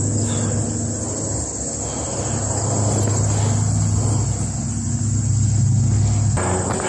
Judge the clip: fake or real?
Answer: real